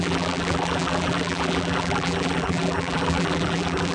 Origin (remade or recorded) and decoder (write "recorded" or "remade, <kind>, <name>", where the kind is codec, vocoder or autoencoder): remade, vocoder, BigVGAN v2